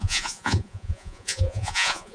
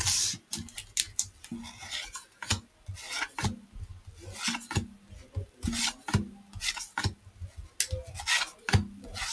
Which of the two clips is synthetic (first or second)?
first